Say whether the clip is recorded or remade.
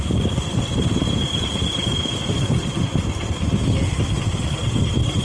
recorded